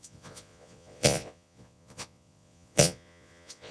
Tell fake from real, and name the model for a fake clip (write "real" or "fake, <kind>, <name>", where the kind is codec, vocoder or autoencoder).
fake, vocoder, Vocos